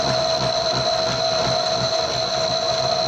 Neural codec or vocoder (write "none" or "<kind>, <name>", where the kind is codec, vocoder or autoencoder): none